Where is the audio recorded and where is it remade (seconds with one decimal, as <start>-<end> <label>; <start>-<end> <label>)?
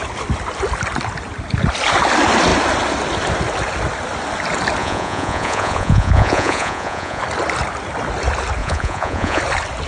0.0-4.8 recorded; 4.8-7.2 remade; 7.2-8.6 recorded; 8.6-9.4 remade; 9.4-9.9 recorded